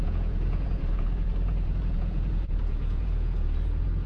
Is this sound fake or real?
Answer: fake